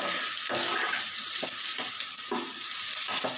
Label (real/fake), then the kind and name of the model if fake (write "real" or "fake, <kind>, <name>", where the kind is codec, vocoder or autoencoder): real